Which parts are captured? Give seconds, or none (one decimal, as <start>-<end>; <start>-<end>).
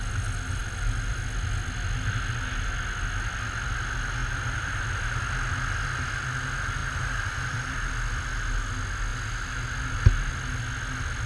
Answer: 0.0-4.2; 4.8-6.8; 7.9-11.3